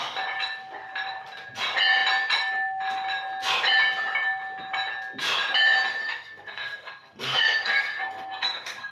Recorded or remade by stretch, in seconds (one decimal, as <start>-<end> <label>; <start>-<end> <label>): 0.0-6.0 recorded; 6.0-8.9 remade